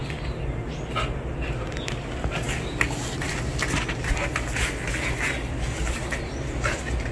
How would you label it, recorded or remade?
recorded